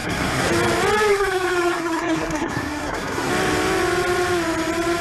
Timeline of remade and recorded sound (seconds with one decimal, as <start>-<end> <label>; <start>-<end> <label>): 0.0-0.5 remade; 0.5-1.1 recorded; 1.1-3.3 remade; 3.3-5.0 recorded